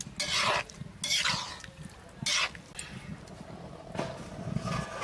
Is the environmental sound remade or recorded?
recorded